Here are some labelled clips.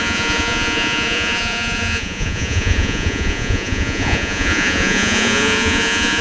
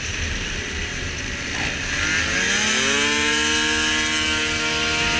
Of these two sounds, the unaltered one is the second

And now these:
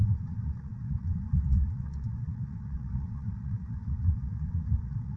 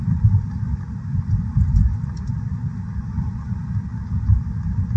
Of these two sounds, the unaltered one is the second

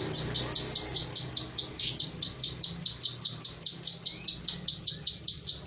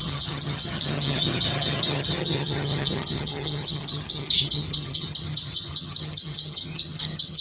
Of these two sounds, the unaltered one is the first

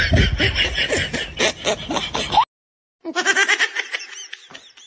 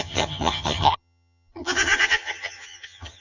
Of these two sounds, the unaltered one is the first